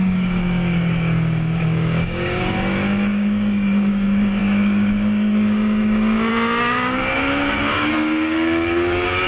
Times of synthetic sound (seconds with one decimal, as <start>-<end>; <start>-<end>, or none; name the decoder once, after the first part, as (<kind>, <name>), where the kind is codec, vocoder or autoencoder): 0.0-9.3 (codec, DAC)